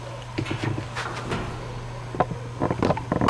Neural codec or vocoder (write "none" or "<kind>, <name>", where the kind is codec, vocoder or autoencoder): none